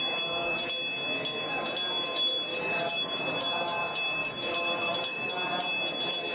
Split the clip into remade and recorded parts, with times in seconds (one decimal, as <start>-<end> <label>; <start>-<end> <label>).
0.0-2.5 recorded; 2.5-3.2 remade; 3.2-4.2 recorded; 4.2-5.3 remade; 5.3-6.3 recorded